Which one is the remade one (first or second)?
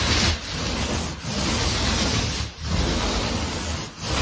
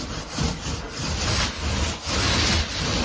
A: second